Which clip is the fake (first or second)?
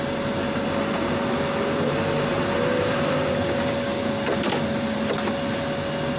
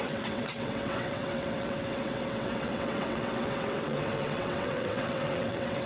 second